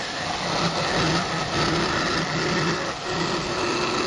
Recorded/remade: recorded